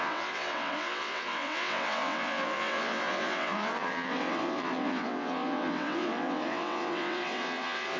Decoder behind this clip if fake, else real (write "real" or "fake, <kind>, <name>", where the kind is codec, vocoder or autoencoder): fake, vocoder, WaveNeXt